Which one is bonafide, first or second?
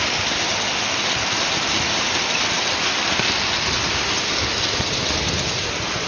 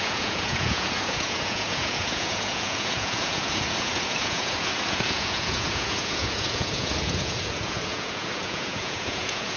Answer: first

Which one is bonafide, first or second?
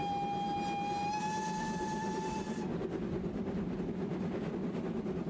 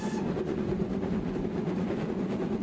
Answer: first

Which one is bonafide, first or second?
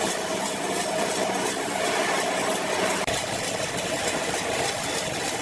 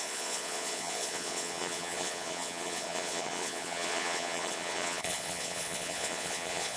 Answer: first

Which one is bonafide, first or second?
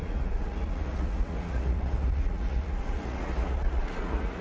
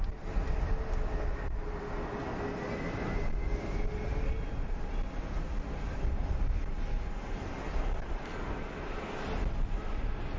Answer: second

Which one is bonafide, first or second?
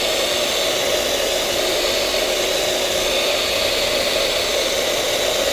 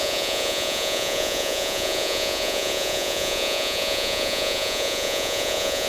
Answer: first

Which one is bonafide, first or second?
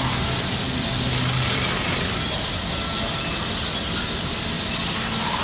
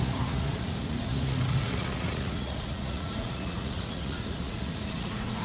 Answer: first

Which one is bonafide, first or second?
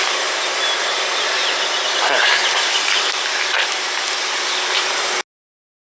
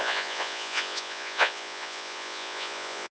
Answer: first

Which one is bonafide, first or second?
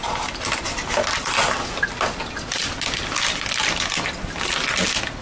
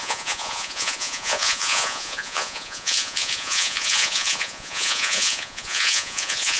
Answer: first